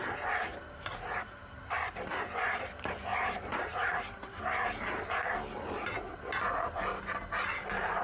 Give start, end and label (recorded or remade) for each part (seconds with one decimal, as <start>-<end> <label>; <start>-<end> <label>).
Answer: 0.0-0.5 recorded; 0.5-2.1 remade; 2.1-3.1 recorded; 3.1-4.4 remade; 4.4-8.0 recorded

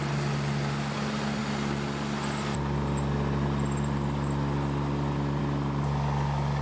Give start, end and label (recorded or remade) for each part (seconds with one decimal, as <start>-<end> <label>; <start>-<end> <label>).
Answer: 0.0-6.6 recorded

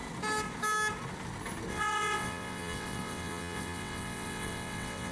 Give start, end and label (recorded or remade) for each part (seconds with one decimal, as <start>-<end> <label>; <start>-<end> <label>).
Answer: 0.0-1.7 recorded; 1.7-5.1 remade

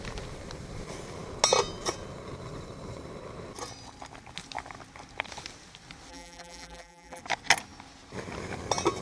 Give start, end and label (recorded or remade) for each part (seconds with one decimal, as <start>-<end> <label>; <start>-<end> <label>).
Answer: 0.0-6.1 recorded; 6.1-7.2 remade; 7.2-9.0 recorded

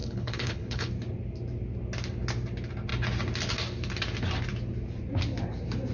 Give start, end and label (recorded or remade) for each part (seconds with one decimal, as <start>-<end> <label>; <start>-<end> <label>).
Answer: 0.0-0.9 remade; 0.9-5.9 recorded

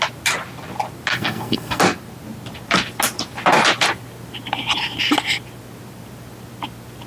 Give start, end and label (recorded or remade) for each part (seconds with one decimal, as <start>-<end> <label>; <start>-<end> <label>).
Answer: 0.0-1.1 recorded; 1.1-1.8 remade; 1.8-7.1 recorded

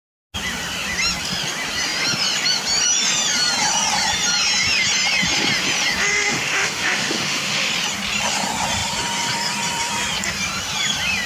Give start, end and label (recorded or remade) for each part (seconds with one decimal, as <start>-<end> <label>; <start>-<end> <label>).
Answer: 0.0-6.1 recorded; 6.1-7.7 remade; 7.7-11.3 recorded